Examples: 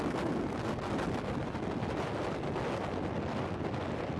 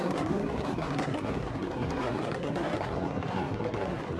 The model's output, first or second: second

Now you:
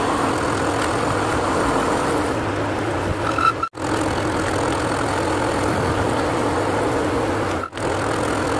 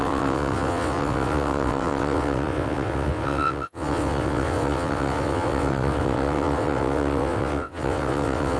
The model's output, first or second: second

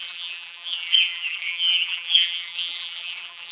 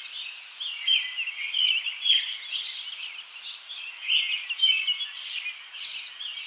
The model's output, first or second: first